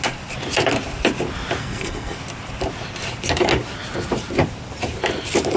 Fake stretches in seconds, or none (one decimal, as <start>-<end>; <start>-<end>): 1.6-2.2